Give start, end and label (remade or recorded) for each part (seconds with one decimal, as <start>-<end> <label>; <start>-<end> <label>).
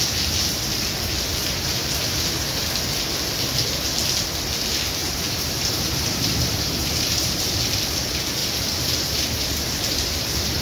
0.0-1.4 recorded; 1.4-2.7 remade; 2.7-5.0 recorded; 5.0-7.5 remade; 7.5-8.4 recorded; 8.4-10.6 remade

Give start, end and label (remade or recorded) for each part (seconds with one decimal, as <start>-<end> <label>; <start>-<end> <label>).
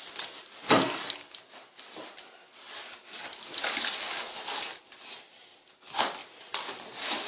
0.0-6.2 recorded; 6.2-7.3 remade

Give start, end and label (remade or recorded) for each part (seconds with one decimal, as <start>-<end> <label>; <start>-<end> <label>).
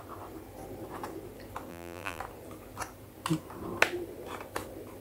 0.0-1.7 recorded; 1.7-2.2 remade; 2.2-5.0 recorded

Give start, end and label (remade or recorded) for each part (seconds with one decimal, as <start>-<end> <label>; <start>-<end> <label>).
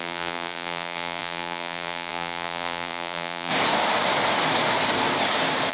0.0-3.5 remade; 3.5-5.7 recorded